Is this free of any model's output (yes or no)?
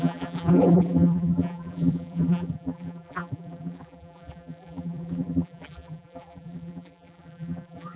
no